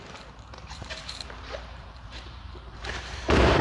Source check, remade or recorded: remade